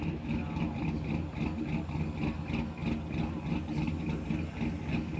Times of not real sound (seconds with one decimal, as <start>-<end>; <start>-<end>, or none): none